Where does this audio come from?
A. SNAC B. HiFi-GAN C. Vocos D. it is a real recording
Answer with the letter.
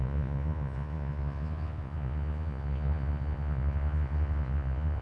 C